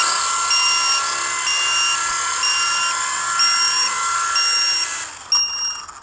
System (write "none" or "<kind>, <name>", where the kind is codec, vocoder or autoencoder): none